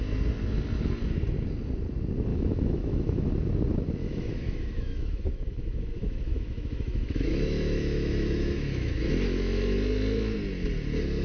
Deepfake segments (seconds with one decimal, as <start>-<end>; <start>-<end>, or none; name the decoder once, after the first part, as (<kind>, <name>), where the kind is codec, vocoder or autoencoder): 2.3-3.3 (autoencoder, DAC-VAE); 4.0-9.1